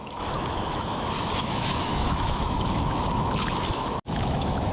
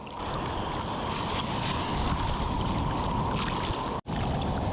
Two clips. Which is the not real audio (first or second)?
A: first